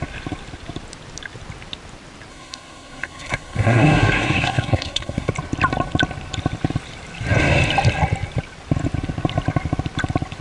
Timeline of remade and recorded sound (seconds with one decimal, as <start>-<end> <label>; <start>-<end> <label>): 0.0-2.3 recorded; 2.3-5.3 remade; 5.3-10.4 recorded